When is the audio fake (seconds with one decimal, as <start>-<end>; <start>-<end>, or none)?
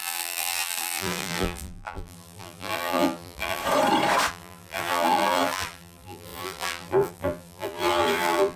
0.0-3.6; 4.3-8.6